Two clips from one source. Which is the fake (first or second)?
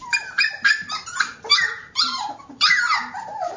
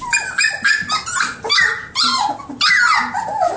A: first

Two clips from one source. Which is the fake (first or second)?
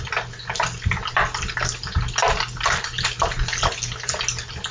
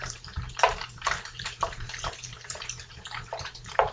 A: second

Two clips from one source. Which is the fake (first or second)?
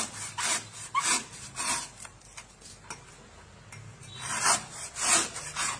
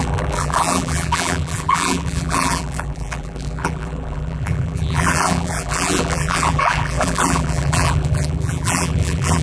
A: second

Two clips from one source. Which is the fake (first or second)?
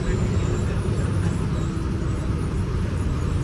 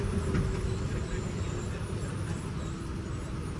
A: second